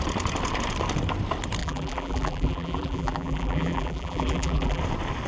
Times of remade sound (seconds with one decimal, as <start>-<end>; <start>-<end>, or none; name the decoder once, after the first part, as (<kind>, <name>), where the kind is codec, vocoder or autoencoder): 1.6-4.8 (vocoder, BigVGAN v2)